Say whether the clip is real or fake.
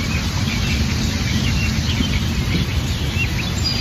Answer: real